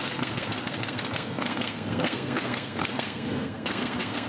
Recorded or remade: remade